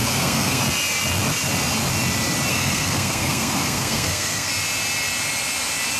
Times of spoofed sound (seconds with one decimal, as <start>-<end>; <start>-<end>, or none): 0.0-0.6; 2.5-4.5